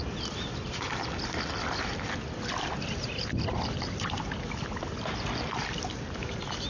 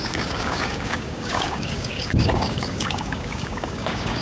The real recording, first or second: first